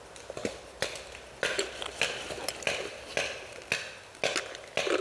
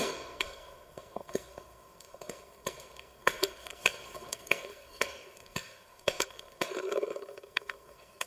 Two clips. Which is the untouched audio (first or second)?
first